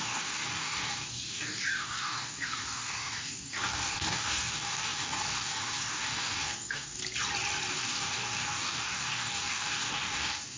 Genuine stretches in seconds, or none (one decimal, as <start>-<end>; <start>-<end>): 7.0-7.7